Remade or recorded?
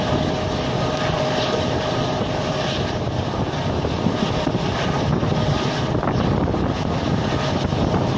recorded